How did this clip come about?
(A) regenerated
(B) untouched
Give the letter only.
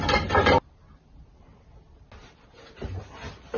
B